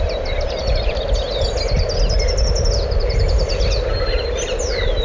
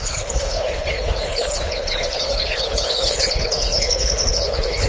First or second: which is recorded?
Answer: first